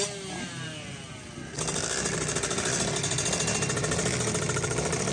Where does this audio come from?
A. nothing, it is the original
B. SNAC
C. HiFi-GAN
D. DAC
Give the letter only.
A